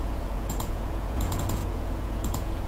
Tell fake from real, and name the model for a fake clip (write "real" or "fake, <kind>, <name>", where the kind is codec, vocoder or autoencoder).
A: fake, vocoder, Vocos